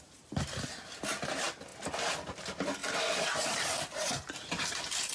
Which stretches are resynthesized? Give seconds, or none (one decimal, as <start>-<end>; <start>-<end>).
2.8-3.8